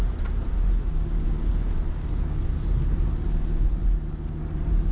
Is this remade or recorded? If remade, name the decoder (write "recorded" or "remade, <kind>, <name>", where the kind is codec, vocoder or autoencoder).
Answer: recorded